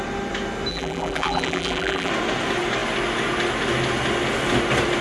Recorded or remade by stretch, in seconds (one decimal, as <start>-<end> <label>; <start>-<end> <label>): 0.0-0.7 recorded; 0.7-2.1 remade; 2.1-5.0 recorded